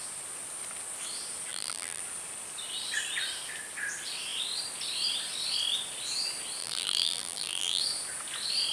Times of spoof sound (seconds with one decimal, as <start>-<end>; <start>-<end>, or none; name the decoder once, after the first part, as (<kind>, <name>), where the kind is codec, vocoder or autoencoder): 1.5-2.0 (vocoder, BigVGAN v2); 6.6-7.8